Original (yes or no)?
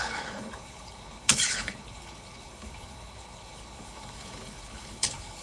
no